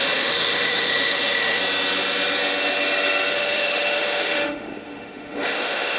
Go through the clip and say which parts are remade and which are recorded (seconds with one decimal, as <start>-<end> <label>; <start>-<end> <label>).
0.0-1.6 remade; 1.6-3.3 recorded; 3.3-6.0 remade